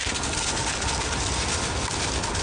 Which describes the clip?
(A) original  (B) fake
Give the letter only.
A